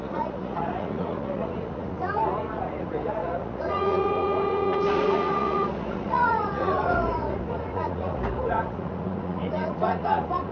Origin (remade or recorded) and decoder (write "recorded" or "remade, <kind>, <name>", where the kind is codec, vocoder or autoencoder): remade, vocoder, Vocos